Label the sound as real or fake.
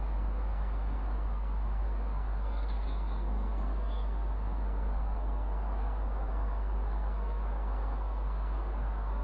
fake